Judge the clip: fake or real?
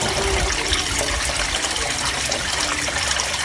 real